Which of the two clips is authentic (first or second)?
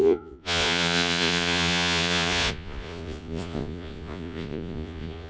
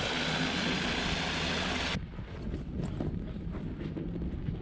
second